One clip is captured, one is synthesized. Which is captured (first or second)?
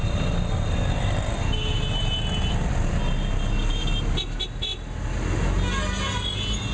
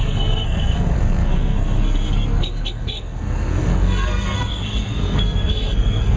first